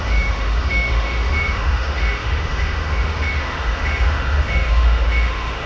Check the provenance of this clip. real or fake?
fake